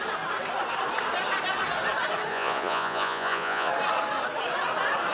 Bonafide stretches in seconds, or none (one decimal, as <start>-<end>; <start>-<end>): 0.0-2.3; 3.7-5.1